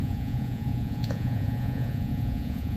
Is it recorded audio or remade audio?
remade